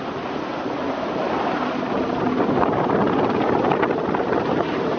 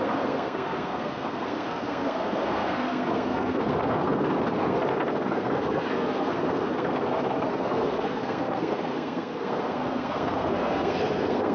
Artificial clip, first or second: second